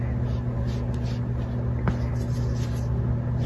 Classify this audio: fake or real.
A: real